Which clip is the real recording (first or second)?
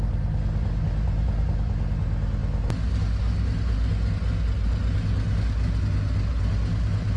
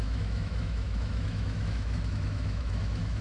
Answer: first